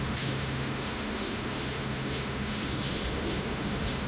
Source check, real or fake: fake